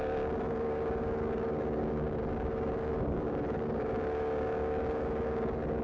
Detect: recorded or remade remade